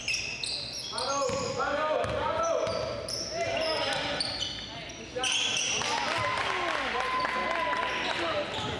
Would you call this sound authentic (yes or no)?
yes